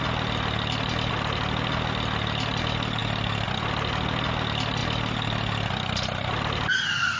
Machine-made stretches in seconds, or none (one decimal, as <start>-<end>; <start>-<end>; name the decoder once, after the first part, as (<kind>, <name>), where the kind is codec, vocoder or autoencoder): none